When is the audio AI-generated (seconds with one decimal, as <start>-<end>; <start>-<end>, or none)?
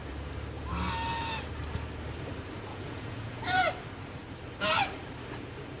2.7-3.7